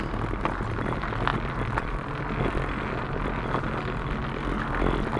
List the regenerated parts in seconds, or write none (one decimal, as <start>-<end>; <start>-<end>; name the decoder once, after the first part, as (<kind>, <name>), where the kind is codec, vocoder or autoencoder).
none